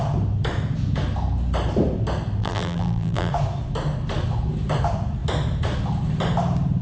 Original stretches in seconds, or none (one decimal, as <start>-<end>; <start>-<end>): 0.0-2.4; 3.3-6.8